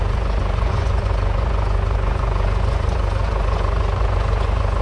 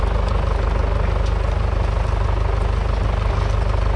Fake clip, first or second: first